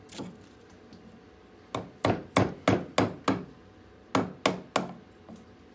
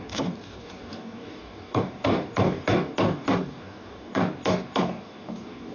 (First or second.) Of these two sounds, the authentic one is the first